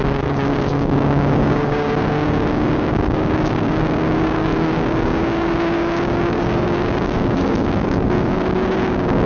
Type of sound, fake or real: fake